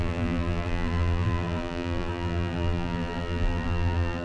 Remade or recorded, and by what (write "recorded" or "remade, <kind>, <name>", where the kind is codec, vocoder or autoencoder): remade, vocoder, BigVGAN v2